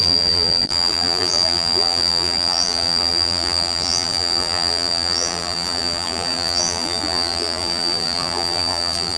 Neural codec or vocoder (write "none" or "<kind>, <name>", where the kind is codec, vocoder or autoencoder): vocoder, BigVGAN v2